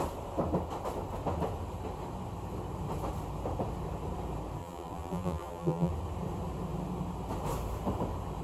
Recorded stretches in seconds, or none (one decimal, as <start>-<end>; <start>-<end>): 0.0-4.6; 5.9-8.4